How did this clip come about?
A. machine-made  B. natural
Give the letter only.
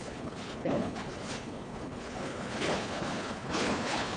A